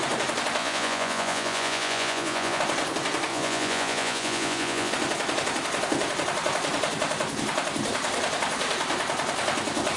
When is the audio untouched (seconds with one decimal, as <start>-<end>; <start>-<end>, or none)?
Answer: 0.0-0.6; 2.6-3.3; 4.9-10.0